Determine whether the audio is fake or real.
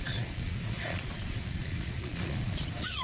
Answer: fake